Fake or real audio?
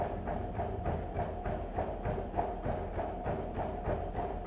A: real